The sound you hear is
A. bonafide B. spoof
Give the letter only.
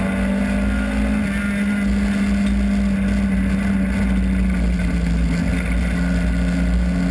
A